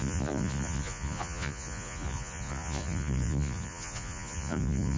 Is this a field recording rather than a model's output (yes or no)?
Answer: no